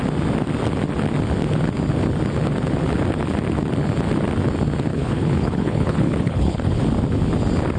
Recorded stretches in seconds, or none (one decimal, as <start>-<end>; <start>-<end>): 0.0-4.9; 6.8-7.8